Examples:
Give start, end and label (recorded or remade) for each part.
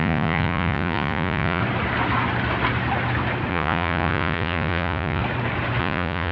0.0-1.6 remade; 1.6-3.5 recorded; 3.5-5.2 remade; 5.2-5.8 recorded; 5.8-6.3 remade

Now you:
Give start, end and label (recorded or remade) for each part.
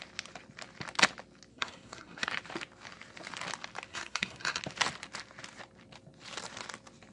0.0-1.5 recorded; 1.5-2.3 remade; 2.3-3.9 recorded; 3.9-4.6 remade; 4.6-7.1 recorded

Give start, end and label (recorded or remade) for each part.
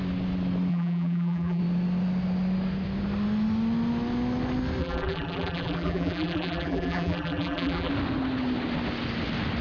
0.0-0.7 recorded; 0.7-1.6 remade; 1.6-4.8 recorded; 4.8-7.9 remade; 7.9-9.6 recorded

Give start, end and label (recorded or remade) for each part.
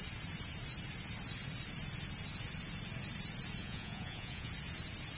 0.0-3.6 recorded; 3.6-4.5 remade; 4.5-5.2 recorded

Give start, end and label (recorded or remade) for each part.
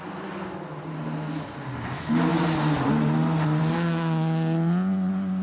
0.0-5.4 recorded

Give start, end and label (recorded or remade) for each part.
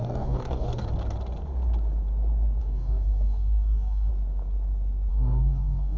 0.0-0.8 remade; 0.8-2.6 recorded; 2.6-4.1 remade; 4.1-5.1 recorded; 5.1-6.0 remade